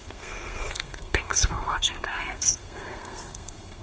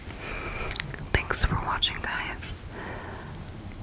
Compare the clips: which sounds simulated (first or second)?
first